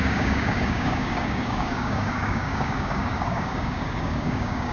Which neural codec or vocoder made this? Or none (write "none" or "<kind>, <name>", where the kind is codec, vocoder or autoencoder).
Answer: codec, DAC